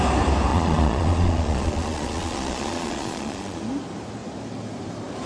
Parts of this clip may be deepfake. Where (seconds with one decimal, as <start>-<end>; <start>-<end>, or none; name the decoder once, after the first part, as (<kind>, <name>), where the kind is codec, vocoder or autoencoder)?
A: 0.5-3.6 (vocoder, Vocos)